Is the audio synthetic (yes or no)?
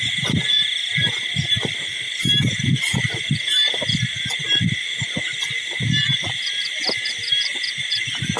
no